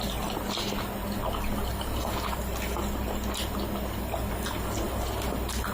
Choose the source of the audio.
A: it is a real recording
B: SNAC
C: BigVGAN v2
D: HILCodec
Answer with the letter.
A